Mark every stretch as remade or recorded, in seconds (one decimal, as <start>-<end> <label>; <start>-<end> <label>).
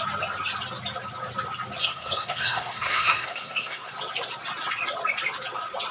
0.0-1.8 recorded; 1.8-3.9 remade; 3.9-5.9 recorded